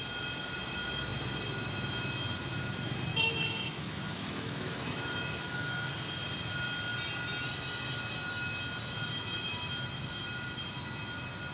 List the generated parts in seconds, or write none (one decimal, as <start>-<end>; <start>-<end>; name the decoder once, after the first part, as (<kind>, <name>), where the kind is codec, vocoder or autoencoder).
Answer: 3.1-5.9 (autoencoder, DAC-VAE)